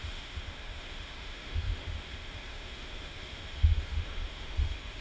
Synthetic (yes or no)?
yes